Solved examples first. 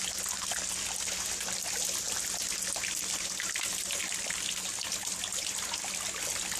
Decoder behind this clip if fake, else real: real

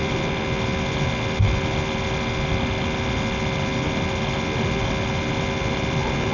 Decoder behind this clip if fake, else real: real